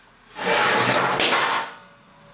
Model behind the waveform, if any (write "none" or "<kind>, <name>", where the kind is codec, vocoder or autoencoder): none